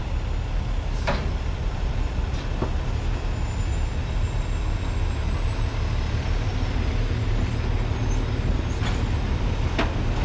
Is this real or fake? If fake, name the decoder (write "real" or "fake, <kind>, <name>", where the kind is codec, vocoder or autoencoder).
real